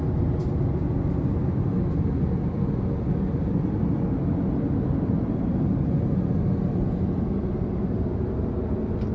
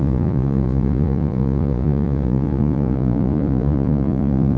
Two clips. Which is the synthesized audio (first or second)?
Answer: second